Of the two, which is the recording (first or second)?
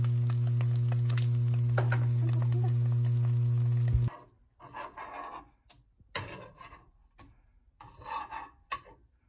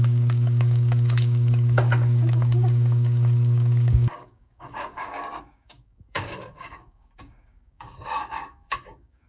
first